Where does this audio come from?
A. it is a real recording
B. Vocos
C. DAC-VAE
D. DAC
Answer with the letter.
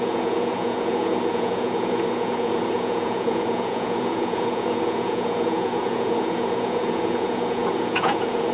B